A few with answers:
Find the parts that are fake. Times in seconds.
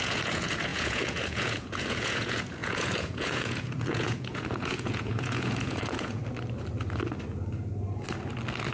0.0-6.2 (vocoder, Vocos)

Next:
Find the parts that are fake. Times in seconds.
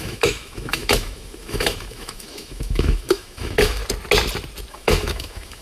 0.0-3.8 (autoencoder, DAC-VAE); 4.7-5.6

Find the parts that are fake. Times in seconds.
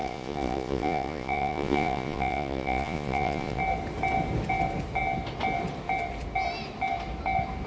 0.0-3.6 (vocoder, Vocos)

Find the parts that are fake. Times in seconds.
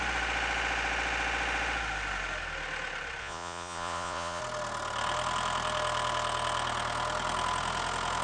3.2-4.4 (vocoder, Vocos)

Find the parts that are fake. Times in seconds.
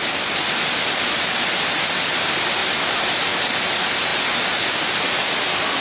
2.6-3.4 (autoencoder, DAC-VAE)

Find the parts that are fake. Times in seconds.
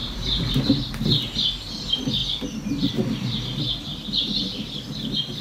0.0-0.6 (vocoder, BigVGAN v2)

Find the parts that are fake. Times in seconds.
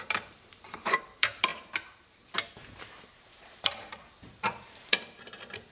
0.0-5.7 (vocoder, BigVGAN v2)